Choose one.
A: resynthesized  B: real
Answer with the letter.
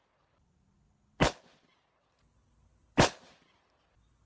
B